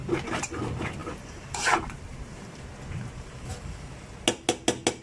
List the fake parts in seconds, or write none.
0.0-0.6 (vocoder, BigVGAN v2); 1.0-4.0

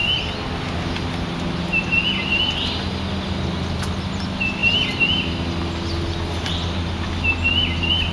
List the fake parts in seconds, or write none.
none

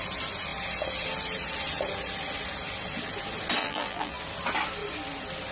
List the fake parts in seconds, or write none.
3.6-4.2 (vocoder, BigVGAN v2)